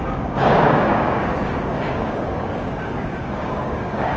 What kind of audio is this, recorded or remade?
remade